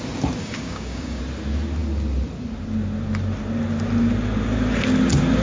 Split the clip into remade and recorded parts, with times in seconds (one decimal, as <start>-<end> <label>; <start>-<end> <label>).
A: 0.0-0.4 recorded; 0.4-1.2 remade; 1.2-5.4 recorded